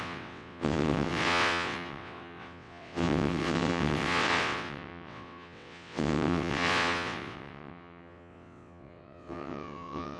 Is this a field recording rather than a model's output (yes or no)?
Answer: no